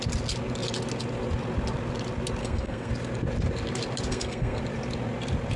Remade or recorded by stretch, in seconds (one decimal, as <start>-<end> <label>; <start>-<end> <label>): 0.0-2.4 recorded; 2.4-2.9 remade; 2.9-4.1 recorded; 4.1-4.6 remade; 4.6-5.6 recorded